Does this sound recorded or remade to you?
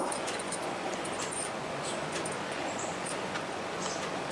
remade